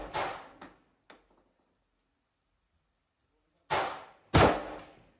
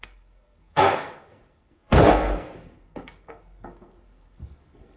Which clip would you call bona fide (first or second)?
first